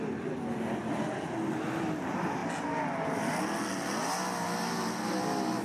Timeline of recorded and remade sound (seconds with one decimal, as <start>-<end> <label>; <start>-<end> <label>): 0.0-5.6 recorded